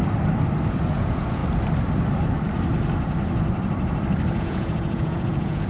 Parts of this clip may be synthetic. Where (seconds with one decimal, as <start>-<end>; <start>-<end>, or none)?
0.7-1.4; 4.4-5.7